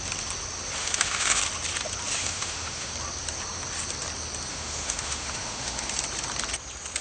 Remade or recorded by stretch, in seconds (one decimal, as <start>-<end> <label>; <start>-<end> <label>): 0.0-0.8 recorded; 0.8-1.4 remade; 1.4-2.2 recorded; 2.2-2.9 remade; 2.9-4.5 recorded; 4.5-5.9 remade; 5.9-7.0 recorded